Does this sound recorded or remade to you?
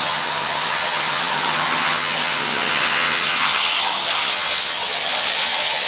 remade